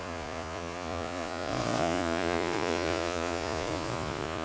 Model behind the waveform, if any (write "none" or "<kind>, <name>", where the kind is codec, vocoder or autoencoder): vocoder, Vocos